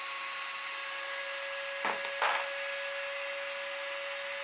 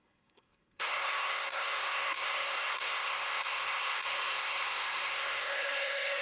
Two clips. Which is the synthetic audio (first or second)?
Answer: second